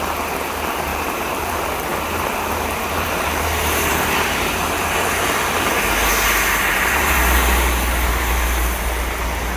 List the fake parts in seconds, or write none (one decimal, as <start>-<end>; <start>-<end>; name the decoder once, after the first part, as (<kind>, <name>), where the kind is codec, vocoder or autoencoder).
0.9-1.5 (vocoder, BigVGAN v2); 1.9-4.8